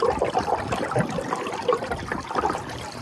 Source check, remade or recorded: recorded